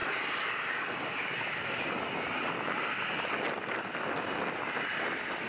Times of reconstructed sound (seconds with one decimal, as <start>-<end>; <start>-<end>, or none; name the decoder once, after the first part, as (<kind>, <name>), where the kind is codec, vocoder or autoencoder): none